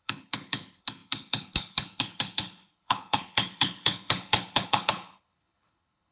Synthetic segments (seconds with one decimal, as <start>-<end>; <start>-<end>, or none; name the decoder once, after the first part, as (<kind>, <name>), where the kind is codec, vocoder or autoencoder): 0.0-6.1 (codec, HILCodec)